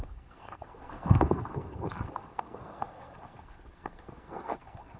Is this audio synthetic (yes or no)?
yes